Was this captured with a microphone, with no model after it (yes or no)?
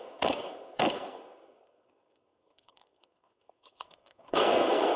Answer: no